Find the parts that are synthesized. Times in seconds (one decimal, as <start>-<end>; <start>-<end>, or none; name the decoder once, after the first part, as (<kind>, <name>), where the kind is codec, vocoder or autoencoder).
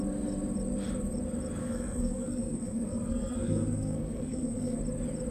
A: 1.6-4.8 (codec, SNAC)